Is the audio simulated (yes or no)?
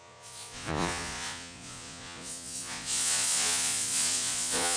yes